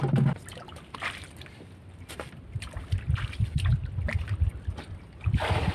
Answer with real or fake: real